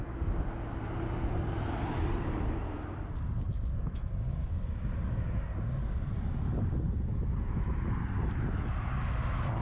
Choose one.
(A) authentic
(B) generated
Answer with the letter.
A